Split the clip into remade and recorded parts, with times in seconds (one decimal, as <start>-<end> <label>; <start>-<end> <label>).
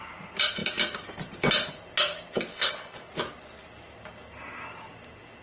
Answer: 0.0-2.5 recorded; 2.5-3.1 remade; 3.1-5.4 recorded